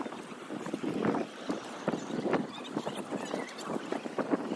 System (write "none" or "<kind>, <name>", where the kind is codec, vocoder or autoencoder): none